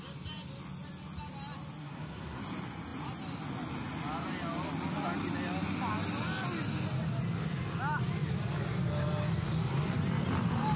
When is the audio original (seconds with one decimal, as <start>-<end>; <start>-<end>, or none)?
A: 0.0-1.8; 2.4-10.8